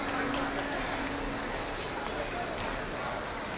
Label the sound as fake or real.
real